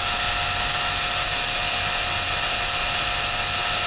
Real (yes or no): yes